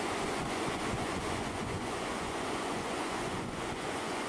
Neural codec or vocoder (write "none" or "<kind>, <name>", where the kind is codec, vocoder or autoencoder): vocoder, Vocos